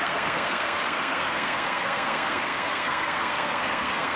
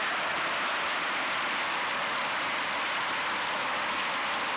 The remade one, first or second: first